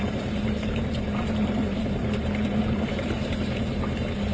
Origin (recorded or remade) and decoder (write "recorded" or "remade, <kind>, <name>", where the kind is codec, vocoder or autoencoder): remade, vocoder, BigVGAN v2